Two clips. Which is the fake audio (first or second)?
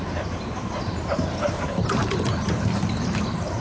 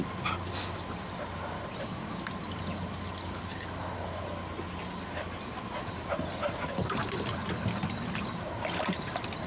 first